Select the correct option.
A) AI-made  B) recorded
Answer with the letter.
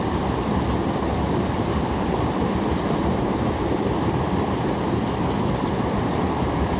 B